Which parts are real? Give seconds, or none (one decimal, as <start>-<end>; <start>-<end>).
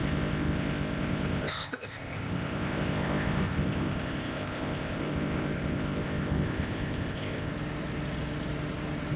7.5-9.2